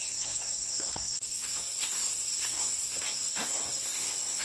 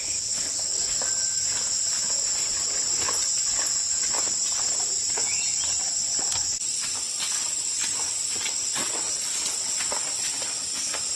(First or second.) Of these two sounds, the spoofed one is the first